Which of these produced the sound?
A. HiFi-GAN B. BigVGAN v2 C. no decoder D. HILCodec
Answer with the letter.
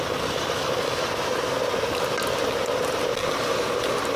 C